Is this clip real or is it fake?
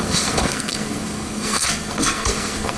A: fake